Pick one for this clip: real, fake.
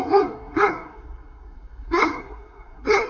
fake